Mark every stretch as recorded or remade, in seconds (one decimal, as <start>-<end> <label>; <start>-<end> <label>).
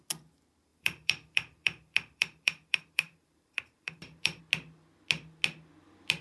0.0-0.7 recorded; 0.7-4.4 remade; 4.4-6.2 recorded